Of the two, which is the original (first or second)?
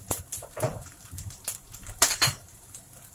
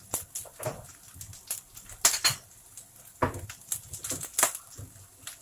second